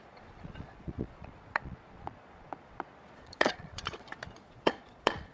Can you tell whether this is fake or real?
fake